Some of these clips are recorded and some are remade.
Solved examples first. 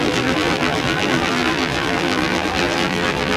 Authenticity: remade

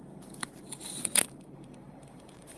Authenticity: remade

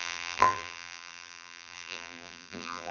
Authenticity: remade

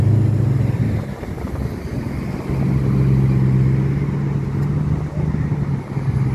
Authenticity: recorded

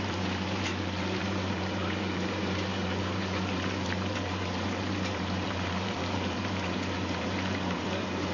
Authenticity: remade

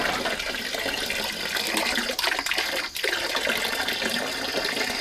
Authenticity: recorded